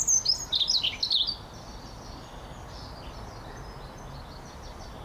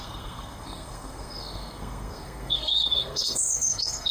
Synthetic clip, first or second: second